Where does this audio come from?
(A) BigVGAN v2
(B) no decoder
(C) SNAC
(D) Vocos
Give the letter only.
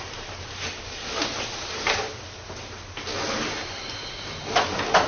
B